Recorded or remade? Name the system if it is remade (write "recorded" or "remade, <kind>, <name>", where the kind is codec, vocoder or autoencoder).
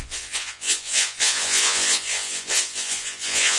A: remade, vocoder, Vocos